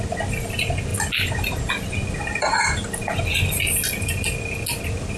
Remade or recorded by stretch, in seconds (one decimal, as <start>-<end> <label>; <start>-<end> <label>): 0.0-5.2 recorded